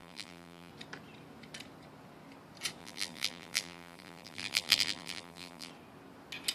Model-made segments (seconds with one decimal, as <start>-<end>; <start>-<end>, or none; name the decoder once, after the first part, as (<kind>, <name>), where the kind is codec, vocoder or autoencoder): 0.0-0.7 (vocoder, BigVGAN v2); 2.8-5.7